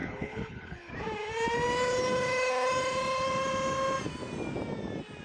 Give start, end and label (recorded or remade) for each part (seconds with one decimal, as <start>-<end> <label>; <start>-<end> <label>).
0.0-0.9 remade; 0.9-5.2 recorded